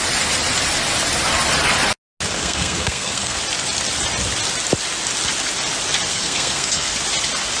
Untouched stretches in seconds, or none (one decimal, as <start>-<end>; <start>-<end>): 0.0-2.3; 3.4-6.1; 6.9-7.6